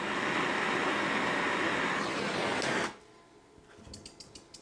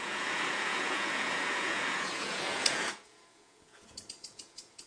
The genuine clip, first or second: first